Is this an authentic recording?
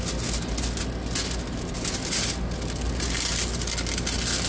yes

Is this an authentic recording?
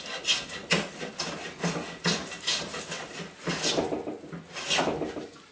yes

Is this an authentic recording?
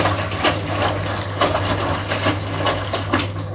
yes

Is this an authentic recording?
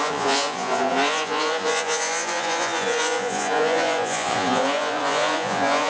no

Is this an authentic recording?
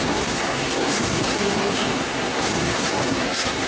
no